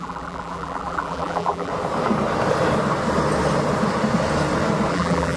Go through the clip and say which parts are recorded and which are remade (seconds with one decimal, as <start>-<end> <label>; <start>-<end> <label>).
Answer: 0.0-1.7 remade; 1.7-4.9 recorded; 4.9-5.4 remade